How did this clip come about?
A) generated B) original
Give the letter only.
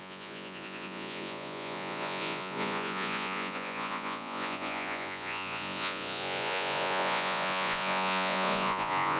A